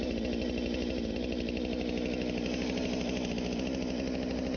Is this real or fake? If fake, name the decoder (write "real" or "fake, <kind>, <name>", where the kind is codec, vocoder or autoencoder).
real